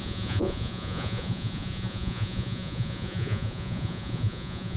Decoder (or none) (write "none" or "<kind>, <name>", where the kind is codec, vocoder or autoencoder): vocoder, Vocos